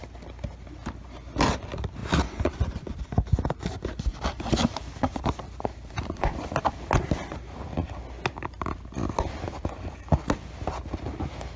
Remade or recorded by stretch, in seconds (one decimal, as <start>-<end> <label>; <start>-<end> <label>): 0.0-2.0 recorded; 2.0-6.6 remade; 6.6-11.6 recorded